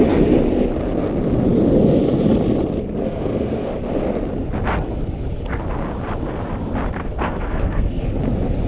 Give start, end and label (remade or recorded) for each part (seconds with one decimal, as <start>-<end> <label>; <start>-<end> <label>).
0.0-3.0 recorded; 3.0-3.7 remade; 3.7-7.0 recorded; 7.0-8.0 remade; 8.0-8.7 recorded